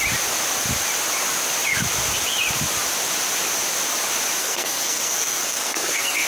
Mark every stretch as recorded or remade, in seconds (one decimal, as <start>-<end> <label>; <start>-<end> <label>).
0.0-4.4 recorded; 4.4-6.3 remade